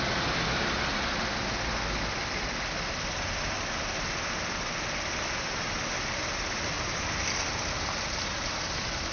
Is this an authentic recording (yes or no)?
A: yes